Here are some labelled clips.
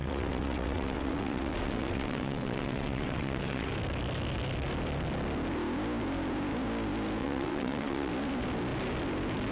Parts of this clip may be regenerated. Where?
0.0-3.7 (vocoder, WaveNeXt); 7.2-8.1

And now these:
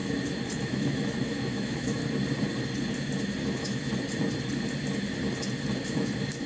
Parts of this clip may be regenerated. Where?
0.6-2.0 (autoencoder, DAC-VAE); 3.4-3.9; 5.8-6.5

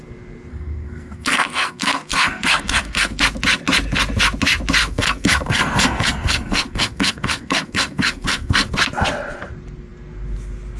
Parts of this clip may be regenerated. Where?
0.5-3.2 (codec, SNAC); 4.8-8.7

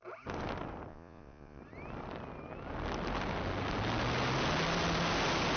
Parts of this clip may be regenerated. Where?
0.9-1.6 (vocoder, Vocos)

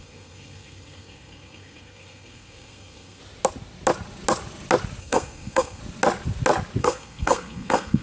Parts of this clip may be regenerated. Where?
0.0-3.2 (codec, SNAC); 5.0-5.8; 6.8-8.0

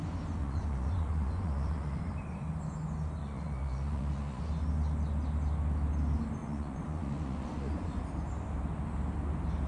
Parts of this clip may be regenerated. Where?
0.4-2.0 (vocoder, Vocos); 3.2-4.4; 6.4-8.0